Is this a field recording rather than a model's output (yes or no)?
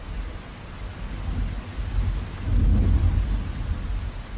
yes